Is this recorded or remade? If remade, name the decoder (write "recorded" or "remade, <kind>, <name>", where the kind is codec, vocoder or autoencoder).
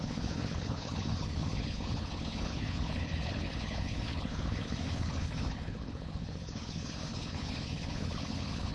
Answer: remade, codec, HILCodec